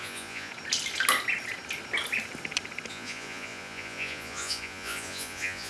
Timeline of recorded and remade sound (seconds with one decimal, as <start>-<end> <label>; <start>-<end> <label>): 0.0-0.5 remade; 0.5-2.9 recorded; 2.9-5.7 remade